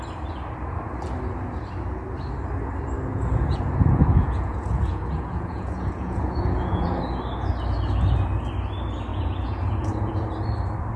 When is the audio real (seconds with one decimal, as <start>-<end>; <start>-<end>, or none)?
0.0-3.1; 7.0-9.1; 10.1-11.0